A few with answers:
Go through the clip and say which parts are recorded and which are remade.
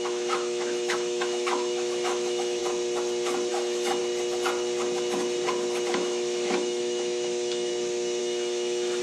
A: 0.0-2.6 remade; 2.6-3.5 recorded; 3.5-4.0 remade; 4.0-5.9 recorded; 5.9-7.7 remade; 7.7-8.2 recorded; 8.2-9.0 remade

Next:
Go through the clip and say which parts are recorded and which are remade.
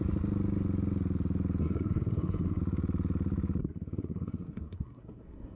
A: 0.0-1.6 recorded; 1.6-2.6 remade; 2.6-3.6 recorded; 3.6-5.6 remade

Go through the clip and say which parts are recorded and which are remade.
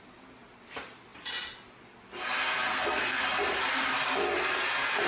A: 0.0-2.7 recorded; 2.7-3.2 remade; 3.2-5.1 recorded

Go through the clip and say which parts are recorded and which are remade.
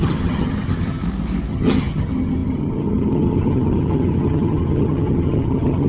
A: 0.0-1.0 remade; 1.0-1.5 recorded; 1.5-5.9 remade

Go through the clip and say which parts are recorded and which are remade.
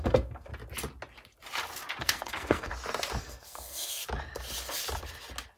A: 0.0-0.5 remade; 0.5-2.0 recorded; 2.0-2.7 remade; 2.7-3.2 recorded; 3.2-4.0 remade; 4.0-5.6 recorded